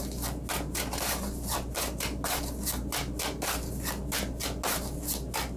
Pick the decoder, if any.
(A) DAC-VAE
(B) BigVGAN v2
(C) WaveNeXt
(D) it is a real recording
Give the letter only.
D